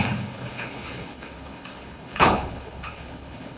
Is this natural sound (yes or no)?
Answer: no